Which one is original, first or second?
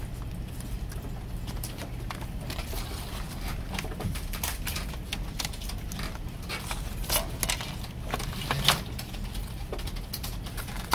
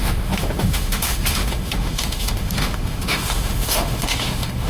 first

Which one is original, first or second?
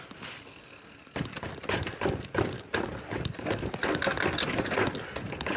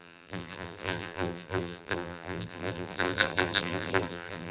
first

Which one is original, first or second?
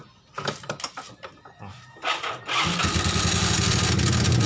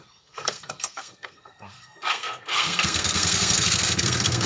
first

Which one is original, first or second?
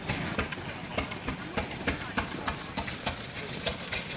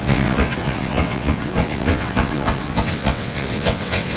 first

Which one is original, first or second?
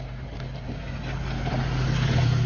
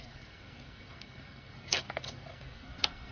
first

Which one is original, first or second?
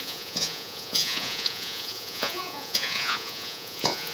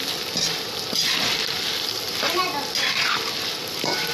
second